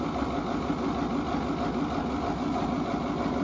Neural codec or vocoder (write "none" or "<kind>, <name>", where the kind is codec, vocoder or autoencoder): none